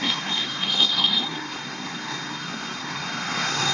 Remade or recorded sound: remade